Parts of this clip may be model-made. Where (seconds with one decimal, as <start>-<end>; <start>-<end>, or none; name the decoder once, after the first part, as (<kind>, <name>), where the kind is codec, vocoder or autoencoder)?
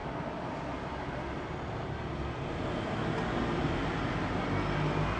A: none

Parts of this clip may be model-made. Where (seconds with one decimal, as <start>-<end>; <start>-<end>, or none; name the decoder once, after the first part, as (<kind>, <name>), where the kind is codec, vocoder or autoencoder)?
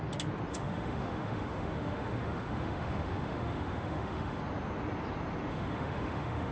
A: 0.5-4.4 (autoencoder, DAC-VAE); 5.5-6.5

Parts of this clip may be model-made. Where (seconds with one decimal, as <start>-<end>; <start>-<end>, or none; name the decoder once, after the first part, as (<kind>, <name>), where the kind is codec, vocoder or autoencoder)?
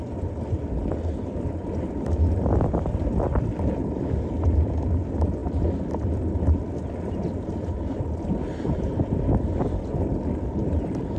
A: 0.0-11.2 (vocoder, BigVGAN v2)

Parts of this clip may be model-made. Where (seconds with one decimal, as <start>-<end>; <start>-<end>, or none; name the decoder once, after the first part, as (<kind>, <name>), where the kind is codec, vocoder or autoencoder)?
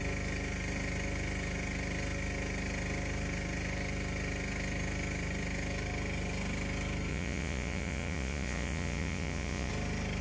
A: 7.1-9.7 (vocoder, Vocos)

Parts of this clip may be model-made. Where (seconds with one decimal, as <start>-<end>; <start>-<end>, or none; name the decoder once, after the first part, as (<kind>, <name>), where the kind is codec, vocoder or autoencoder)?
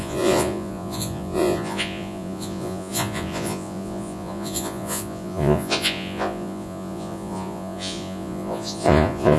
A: 0.0-9.4 (vocoder, Vocos)